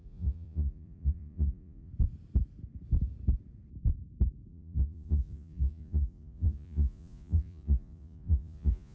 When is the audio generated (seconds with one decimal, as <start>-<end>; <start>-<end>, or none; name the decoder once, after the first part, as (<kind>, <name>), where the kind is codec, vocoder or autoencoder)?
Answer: 0.0-1.9 (vocoder, Vocos); 4.5-8.9